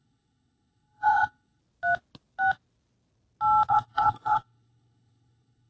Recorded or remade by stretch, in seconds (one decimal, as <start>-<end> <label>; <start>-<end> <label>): 0.0-1.6 remade; 1.6-3.7 recorded; 3.7-5.7 remade